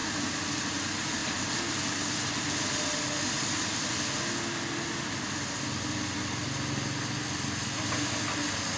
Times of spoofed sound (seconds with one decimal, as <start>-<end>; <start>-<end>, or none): none